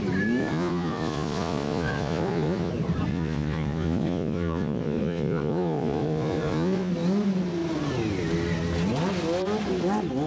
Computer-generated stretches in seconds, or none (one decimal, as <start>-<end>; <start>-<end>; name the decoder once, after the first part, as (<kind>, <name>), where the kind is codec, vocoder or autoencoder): 0.4-2.7 (vocoder, Vocos); 3.1-6.9